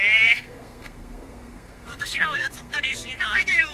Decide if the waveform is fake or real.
fake